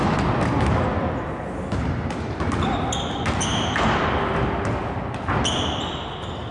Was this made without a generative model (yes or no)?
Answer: yes